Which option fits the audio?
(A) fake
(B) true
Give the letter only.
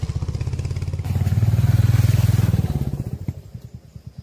B